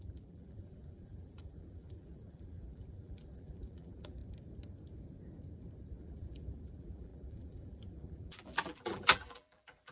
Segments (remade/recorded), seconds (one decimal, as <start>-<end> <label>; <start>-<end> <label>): 0.0-4.2 remade; 4.2-6.0 recorded; 6.0-9.9 remade